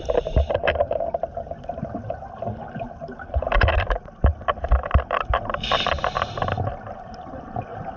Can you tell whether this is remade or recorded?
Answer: recorded